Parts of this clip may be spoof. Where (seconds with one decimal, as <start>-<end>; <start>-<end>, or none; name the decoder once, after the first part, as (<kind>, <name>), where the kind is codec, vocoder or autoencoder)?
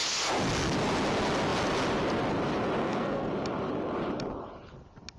2.8-3.3 (codec, SNAC)